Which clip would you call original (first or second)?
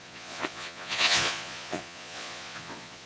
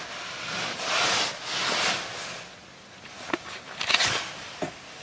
second